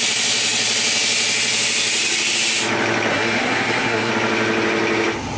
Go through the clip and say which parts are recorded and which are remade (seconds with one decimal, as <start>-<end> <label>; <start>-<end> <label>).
0.0-3.1 recorded; 3.1-4.1 remade; 4.1-5.4 recorded